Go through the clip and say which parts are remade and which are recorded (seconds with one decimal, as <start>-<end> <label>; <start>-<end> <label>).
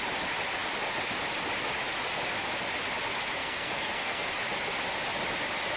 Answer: 0.0-3.4 recorded; 3.4-4.3 remade; 4.3-5.8 recorded